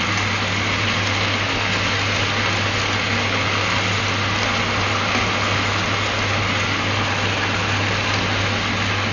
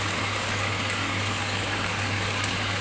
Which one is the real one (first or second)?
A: first